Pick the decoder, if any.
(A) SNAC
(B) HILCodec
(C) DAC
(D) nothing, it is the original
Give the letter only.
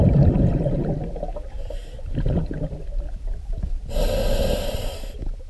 D